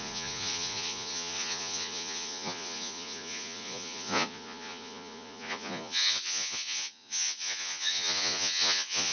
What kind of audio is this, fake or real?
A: fake